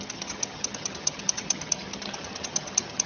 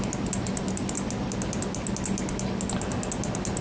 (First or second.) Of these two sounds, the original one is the second